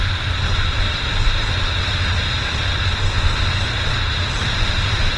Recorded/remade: recorded